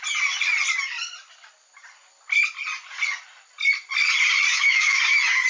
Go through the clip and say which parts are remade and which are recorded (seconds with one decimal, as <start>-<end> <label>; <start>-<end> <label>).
0.0-4.5 recorded; 4.5-5.0 remade; 5.0-5.5 recorded

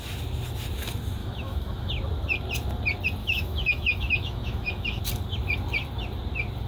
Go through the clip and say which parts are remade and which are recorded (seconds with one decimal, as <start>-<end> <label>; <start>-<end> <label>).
0.0-1.2 recorded; 1.2-1.9 remade; 1.9-3.2 recorded; 3.2-5.0 remade; 5.0-6.7 recorded